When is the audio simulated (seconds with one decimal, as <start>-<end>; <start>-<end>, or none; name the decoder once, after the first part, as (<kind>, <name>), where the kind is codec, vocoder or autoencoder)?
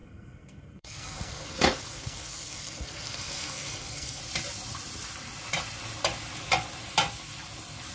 0.0-4.2 (codec, SNAC)